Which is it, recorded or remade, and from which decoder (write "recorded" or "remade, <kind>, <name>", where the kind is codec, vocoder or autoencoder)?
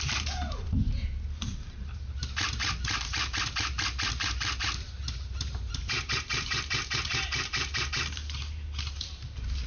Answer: remade, vocoder, BigVGAN v2